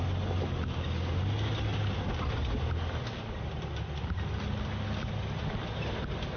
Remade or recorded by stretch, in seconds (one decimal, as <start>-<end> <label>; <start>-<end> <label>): 0.0-6.4 recorded